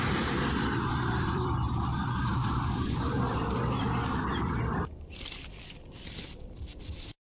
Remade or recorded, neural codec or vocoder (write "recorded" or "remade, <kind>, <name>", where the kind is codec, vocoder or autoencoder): remade, vocoder, BigVGAN v2